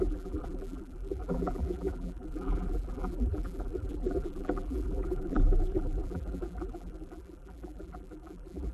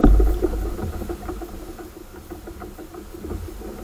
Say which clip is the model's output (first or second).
first